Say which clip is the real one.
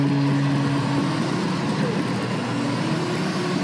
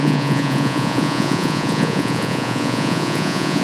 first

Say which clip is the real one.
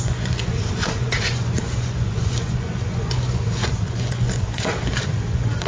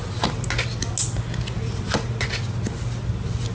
second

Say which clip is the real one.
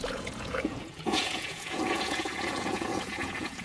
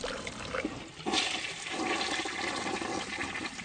second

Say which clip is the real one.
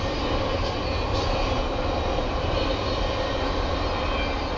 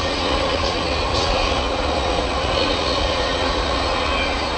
first